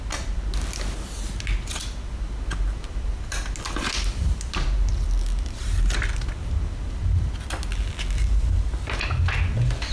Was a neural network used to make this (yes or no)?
no